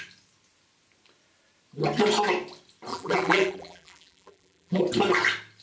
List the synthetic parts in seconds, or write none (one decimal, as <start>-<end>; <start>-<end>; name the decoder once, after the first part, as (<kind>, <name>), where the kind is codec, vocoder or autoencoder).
2.9-4.8 (vocoder, BigVGAN v2)